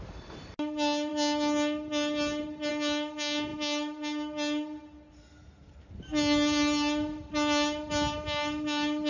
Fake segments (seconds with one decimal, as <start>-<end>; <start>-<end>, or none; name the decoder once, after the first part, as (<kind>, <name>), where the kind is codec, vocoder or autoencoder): none